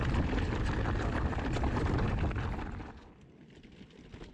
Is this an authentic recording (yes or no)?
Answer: yes